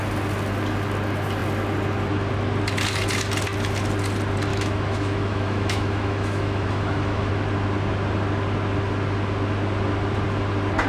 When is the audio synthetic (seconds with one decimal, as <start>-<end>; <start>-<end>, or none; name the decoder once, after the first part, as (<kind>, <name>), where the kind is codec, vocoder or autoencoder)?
4.5-7.3 (autoencoder, DAC-VAE)